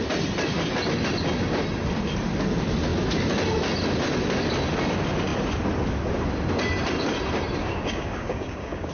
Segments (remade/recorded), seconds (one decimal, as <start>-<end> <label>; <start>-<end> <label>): 0.0-7.6 recorded; 7.6-8.9 remade

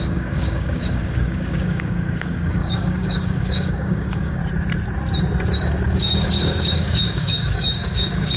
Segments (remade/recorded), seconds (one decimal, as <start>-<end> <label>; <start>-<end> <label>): 0.0-4.4 remade; 4.4-5.9 recorded; 5.9-8.4 remade

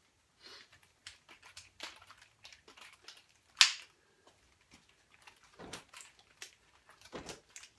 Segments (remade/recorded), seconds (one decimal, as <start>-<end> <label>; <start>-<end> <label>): 0.0-7.8 recorded